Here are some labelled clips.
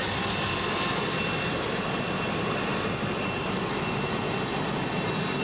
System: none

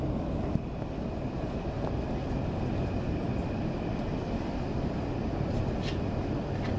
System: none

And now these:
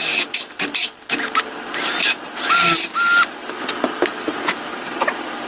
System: none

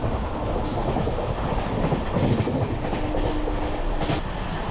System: none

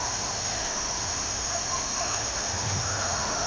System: autoencoder, DAC-VAE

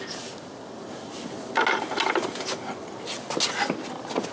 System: none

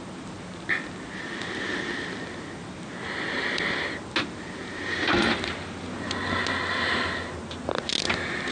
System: none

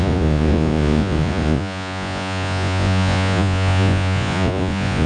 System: vocoder, Vocos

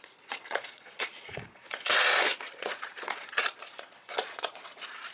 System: vocoder, Vocos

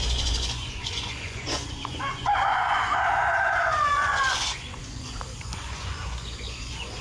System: vocoder, Vocos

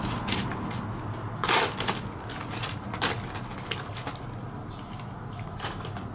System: none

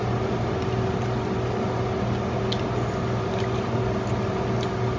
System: none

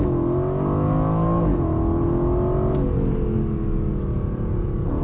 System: none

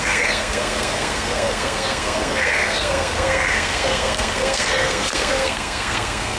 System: codec, SNAC